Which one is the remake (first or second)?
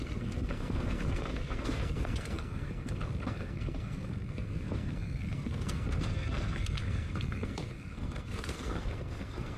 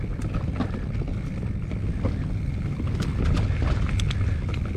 first